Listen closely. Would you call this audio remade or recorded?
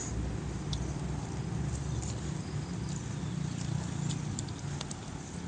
recorded